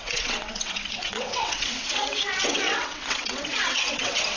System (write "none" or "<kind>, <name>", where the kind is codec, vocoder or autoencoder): vocoder, WaveNeXt